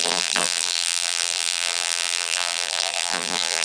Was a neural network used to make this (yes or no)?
yes